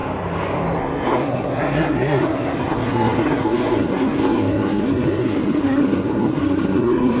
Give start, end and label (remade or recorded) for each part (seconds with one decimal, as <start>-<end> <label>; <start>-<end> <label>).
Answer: 0.0-0.8 recorded; 0.8-7.2 remade